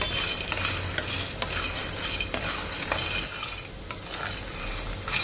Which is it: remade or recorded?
recorded